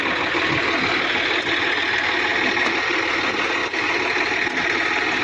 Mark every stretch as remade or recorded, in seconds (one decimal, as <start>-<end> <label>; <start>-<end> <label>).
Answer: 0.0-5.2 recorded